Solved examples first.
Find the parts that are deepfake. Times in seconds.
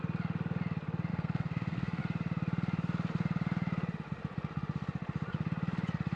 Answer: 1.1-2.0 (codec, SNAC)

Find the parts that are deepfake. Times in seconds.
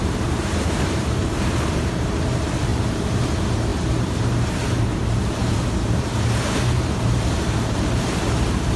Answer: 0.0-8.8 (vocoder, BigVGAN v2)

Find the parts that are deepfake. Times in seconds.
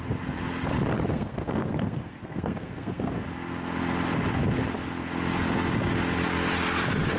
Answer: 1.1-3.1 (codec, SNAC)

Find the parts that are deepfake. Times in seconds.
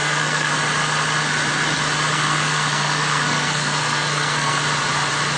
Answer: 0.0-0.5 (codec, SNAC); 2.1-4.6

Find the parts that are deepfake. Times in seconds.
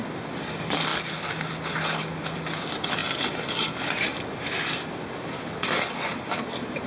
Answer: none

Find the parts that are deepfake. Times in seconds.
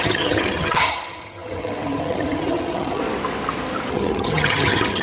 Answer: 0.0-3.0 (vocoder, HiFi-GAN); 3.9-5.0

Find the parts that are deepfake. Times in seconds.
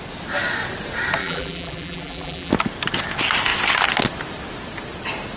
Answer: 1.2-2.5 (vocoder, BigVGAN v2)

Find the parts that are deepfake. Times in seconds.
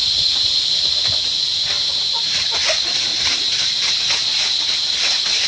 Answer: none